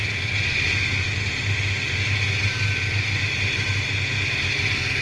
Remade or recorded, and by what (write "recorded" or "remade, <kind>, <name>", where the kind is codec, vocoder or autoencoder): recorded